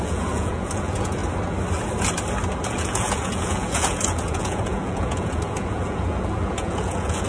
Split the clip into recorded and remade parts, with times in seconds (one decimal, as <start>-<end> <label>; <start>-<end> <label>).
0.0-1.2 remade; 1.2-2.7 recorded; 2.7-7.3 remade